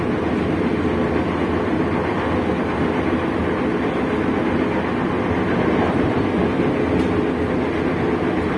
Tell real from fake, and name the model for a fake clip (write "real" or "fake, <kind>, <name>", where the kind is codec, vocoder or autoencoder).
real